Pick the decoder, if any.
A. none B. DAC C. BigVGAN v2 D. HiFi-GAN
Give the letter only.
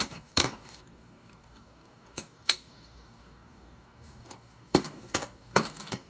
B